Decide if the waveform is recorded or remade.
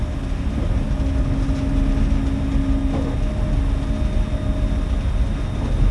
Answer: recorded